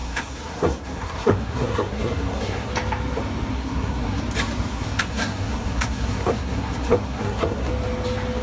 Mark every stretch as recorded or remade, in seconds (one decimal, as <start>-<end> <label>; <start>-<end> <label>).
0.0-2.7 remade; 2.7-3.5 recorded; 3.5-4.2 remade; 4.2-4.7 recorded; 4.7-7.7 remade; 7.7-8.4 recorded